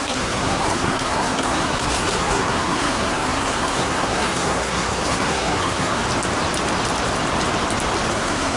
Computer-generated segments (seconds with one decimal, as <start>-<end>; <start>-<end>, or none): 0.0-6.0; 8.1-8.6